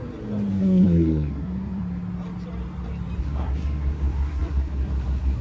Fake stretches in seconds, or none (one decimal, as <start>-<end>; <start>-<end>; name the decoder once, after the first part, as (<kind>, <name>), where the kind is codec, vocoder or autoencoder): 0.5-1.8 (codec, SNAC); 3.2-5.4